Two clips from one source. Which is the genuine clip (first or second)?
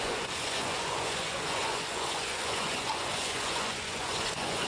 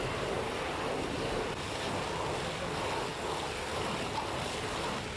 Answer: second